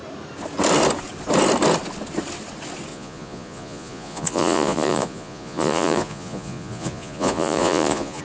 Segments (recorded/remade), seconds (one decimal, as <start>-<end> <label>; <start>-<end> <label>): 0.0-2.9 recorded; 2.9-8.2 remade